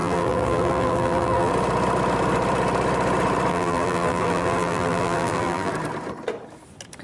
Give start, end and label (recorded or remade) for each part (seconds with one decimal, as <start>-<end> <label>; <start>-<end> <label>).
0.0-1.5 remade; 1.5-3.5 recorded; 3.5-5.7 remade; 5.7-7.0 recorded